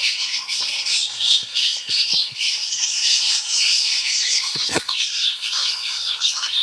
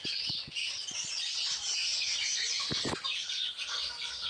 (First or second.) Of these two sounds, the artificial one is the first